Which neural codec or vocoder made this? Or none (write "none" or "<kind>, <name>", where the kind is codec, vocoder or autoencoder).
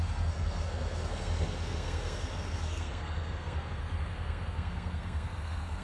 codec, SNAC